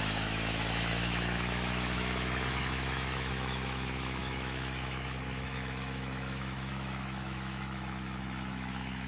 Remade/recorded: remade